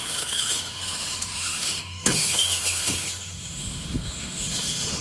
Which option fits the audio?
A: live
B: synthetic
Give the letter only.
B